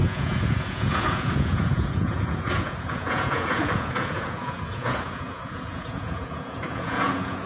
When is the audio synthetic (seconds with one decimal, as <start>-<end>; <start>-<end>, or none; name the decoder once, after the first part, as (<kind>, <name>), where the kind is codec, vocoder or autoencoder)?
0.0-7.5 (vocoder, Vocos)